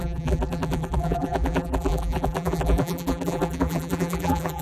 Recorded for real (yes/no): no